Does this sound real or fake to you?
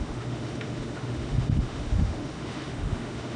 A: fake